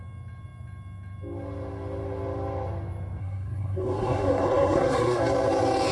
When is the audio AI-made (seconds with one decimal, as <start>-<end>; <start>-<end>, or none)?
3.2-5.2